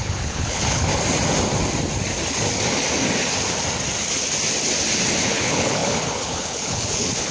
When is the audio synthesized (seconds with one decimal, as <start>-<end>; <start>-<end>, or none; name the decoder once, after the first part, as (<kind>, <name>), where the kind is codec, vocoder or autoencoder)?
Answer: 0.0-0.9 (codec, HILCodec); 5.3-7.3